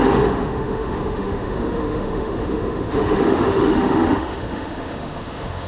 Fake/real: fake